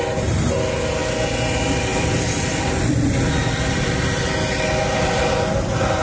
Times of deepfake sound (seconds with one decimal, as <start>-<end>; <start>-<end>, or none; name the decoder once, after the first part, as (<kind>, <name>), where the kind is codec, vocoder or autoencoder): 1.9-4.2 (vocoder, BigVGAN v2)